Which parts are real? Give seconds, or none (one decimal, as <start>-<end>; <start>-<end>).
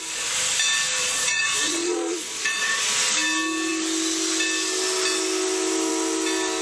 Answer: 0.0-1.0; 2.9-6.6